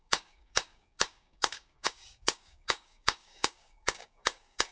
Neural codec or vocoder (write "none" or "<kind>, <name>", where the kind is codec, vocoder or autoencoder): codec, DAC